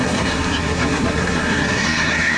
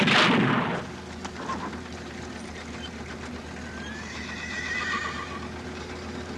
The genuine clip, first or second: second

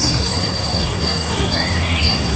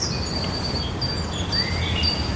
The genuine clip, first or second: second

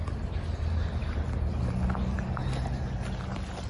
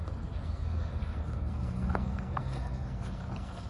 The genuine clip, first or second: first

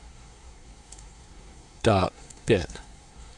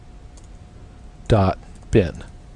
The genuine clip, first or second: second